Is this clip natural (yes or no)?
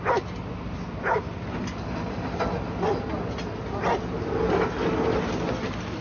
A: yes